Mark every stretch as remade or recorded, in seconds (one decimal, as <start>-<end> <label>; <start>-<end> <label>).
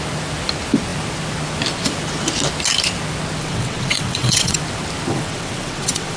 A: 0.0-3.4 recorded; 3.4-4.6 remade; 4.6-5.1 recorded; 5.1-6.2 remade